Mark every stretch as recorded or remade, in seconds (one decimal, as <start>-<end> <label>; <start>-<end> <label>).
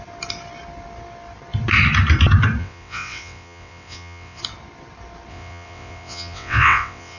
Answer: 0.0-2.6 recorded; 2.6-4.4 remade; 4.4-5.3 recorded; 5.3-7.2 remade